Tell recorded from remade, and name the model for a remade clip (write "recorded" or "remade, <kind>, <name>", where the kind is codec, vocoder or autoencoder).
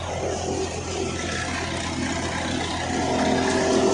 recorded